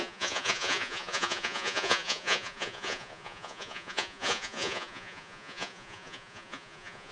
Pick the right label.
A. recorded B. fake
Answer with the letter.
B